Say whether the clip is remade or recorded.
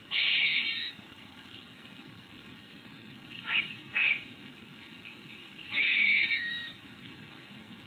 remade